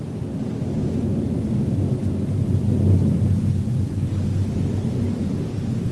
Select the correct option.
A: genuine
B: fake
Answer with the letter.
A